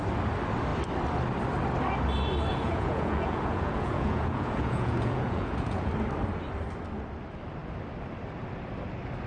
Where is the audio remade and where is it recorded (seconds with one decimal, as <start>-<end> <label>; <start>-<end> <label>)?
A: 0.0-2.5 recorded; 2.5-5.9 remade; 5.9-9.3 recorded